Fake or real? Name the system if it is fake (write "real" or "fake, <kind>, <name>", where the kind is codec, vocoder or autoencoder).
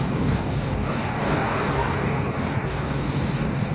fake, codec, DAC